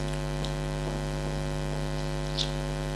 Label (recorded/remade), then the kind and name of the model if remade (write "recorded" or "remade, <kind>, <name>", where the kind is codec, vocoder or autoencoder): recorded